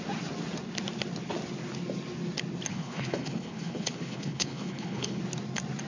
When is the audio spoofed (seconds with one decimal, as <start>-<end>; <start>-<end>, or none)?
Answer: 2.7-5.2

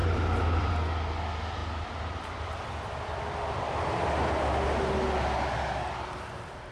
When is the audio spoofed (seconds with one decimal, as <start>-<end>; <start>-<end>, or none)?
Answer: 0.0-0.7; 1.6-4.5